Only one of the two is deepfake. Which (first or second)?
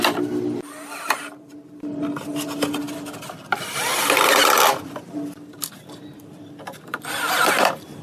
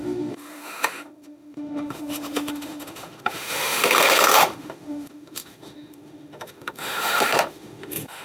second